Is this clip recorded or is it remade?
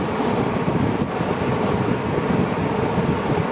recorded